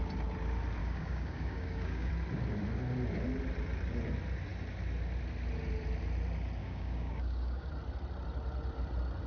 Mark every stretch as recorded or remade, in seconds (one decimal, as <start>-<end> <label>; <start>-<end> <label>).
0.0-0.8 recorded; 0.8-2.1 remade; 2.1-6.6 recorded; 6.6-7.7 remade; 7.7-9.3 recorded